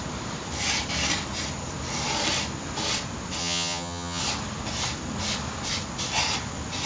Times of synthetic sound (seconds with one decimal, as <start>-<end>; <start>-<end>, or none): 3.4-4.2

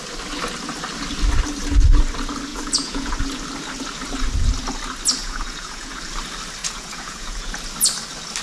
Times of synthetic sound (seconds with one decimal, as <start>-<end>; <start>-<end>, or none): 2.5-3.1; 5.2-6.0; 6.6-7.6

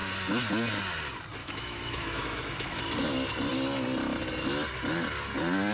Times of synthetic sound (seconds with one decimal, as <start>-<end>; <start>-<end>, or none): 1.4-2.8

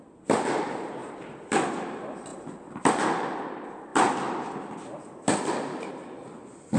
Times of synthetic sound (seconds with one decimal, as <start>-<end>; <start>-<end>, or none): 1.0-1.8; 2.3-2.9; 3.9-4.7

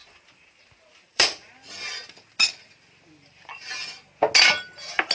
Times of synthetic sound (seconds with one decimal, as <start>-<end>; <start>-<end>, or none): 0.0-1.5

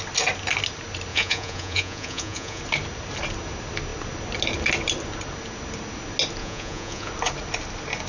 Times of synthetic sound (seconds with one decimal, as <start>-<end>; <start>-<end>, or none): 1.1-2.6; 6.4-7.1